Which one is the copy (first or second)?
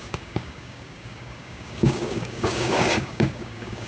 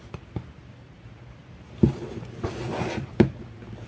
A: first